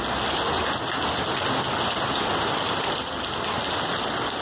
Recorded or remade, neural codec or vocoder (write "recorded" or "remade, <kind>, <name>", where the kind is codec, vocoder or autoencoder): recorded